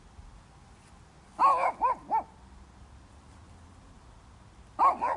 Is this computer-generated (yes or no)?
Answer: no